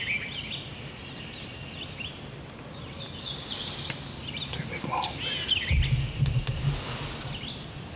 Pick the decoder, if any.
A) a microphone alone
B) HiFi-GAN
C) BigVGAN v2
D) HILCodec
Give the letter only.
A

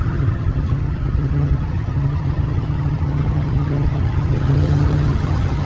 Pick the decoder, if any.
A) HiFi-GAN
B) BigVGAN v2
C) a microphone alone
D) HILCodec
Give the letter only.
A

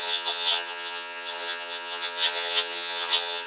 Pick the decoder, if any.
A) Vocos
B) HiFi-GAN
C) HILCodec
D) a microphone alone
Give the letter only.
B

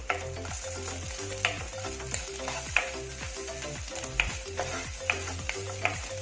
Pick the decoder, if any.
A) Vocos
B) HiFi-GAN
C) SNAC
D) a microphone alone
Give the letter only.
D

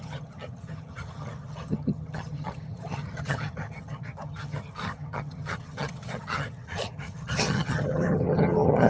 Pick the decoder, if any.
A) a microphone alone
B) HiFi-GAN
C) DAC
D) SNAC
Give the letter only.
B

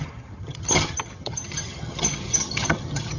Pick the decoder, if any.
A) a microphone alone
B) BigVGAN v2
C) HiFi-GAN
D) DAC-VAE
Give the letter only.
C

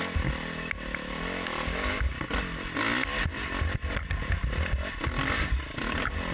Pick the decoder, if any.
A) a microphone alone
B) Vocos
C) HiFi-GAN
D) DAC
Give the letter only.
A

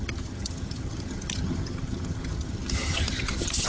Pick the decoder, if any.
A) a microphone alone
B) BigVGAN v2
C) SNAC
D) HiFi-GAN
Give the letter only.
D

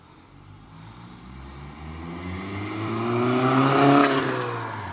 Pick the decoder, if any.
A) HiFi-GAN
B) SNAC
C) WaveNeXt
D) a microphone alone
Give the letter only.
D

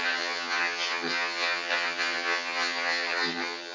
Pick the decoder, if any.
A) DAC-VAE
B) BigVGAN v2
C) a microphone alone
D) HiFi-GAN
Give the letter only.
D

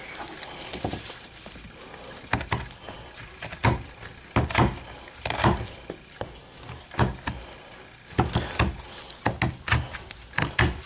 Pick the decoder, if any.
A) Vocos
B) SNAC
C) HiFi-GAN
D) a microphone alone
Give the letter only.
D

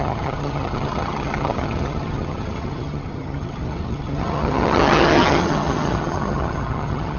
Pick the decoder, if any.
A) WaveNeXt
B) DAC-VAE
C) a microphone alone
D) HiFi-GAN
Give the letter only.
D